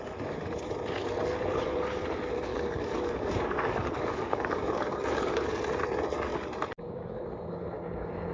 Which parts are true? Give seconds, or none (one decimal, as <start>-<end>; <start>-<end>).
0.0-2.5; 5.5-8.3